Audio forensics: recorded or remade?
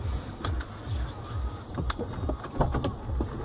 recorded